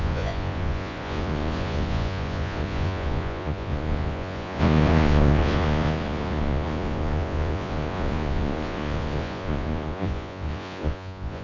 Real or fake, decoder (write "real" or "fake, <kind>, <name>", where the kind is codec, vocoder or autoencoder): fake, vocoder, Vocos